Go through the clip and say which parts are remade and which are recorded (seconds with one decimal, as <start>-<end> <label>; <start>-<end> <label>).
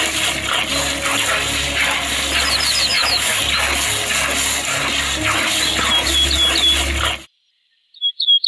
0.0-2.9 recorded; 2.9-3.4 remade; 3.4-8.5 recorded